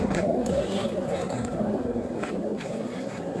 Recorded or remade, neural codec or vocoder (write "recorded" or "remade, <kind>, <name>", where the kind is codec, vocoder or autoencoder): remade, codec, SNAC